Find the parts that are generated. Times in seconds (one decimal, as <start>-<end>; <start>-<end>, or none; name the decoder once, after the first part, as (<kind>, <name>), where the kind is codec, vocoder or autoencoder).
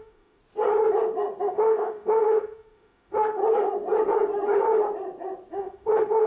0.0-0.4 (autoencoder, DAC-VAE); 1.4-3.4; 5.5-6.3